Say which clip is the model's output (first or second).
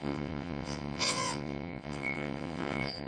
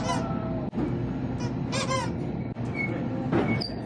first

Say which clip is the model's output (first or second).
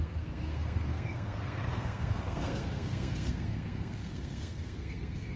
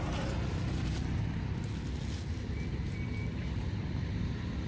first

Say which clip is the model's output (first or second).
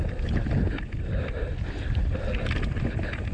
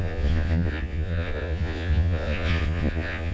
second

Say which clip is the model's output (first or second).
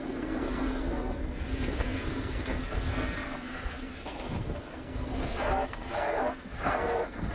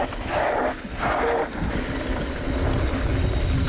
first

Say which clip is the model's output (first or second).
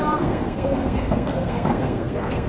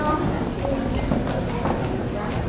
first